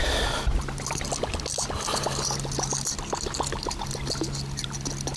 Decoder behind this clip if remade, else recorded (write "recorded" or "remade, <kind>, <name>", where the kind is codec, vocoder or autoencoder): recorded